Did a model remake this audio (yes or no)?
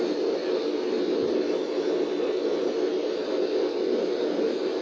no